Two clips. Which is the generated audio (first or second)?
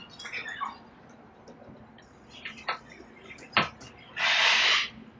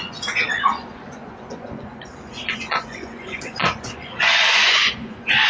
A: second